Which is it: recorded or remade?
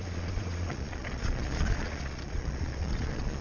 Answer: remade